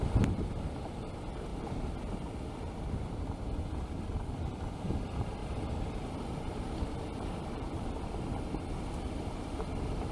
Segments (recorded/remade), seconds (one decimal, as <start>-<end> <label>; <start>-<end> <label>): 0.0-5.4 remade; 5.4-6.4 recorded; 6.4-10.1 remade